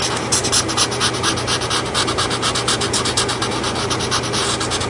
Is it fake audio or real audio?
real